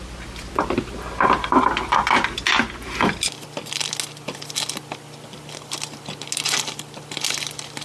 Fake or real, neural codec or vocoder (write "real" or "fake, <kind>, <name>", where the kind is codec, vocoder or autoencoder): real